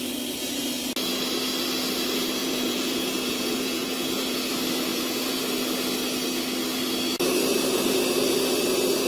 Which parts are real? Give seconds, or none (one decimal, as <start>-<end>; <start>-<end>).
0.0-2.4; 4.5-4.9; 5.4-9.1